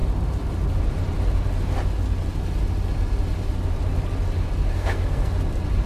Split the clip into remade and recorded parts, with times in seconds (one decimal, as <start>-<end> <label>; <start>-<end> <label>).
0.0-4.7 recorded; 4.7-5.3 remade; 5.3-5.9 recorded